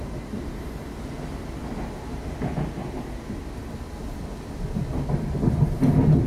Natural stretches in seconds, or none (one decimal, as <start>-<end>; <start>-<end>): 0.0-6.3